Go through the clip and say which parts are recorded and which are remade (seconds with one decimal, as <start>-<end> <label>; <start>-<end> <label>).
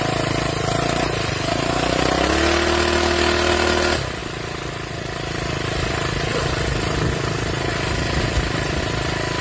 0.0-9.4 recorded